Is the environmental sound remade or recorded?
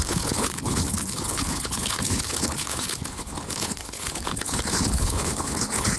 remade